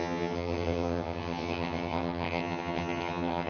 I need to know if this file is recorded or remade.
remade